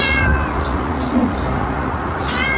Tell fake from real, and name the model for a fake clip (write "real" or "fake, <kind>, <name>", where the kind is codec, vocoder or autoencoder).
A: fake, vocoder, Vocos